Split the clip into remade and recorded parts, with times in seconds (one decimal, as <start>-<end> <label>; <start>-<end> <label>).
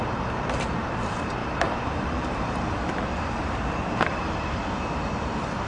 0.0-5.7 remade